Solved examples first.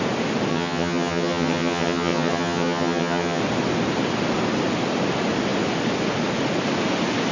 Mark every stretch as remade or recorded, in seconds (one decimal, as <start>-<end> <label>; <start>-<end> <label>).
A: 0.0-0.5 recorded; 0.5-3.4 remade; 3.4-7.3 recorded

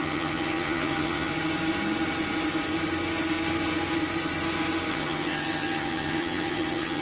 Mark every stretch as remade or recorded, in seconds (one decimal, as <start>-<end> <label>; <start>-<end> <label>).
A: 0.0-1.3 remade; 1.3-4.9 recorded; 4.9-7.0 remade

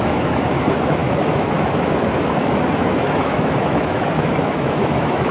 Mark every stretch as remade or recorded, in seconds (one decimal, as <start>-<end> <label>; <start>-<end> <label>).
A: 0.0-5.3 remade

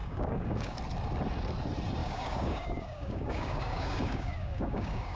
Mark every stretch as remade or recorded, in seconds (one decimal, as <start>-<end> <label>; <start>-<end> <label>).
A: 0.0-0.8 remade; 0.8-2.0 recorded; 2.0-5.2 remade